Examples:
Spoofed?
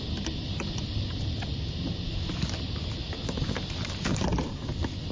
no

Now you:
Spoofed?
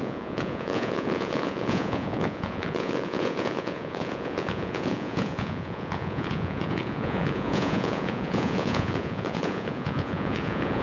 yes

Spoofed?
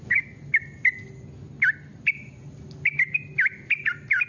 no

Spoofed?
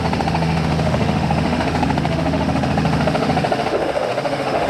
yes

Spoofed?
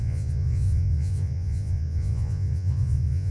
yes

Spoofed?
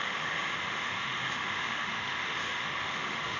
yes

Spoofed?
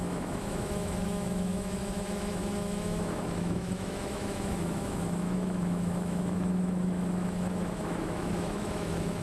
yes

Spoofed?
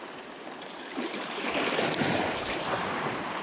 no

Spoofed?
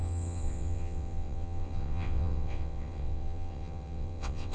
yes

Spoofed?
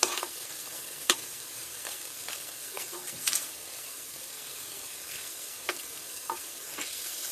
yes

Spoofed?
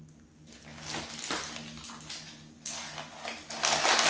no